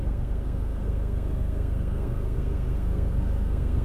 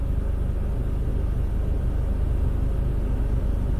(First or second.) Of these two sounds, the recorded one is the second